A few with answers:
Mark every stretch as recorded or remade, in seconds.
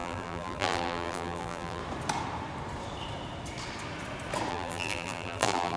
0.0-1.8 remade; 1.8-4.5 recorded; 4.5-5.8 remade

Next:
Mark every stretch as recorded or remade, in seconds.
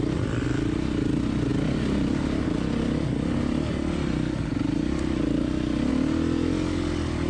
0.0-7.3 recorded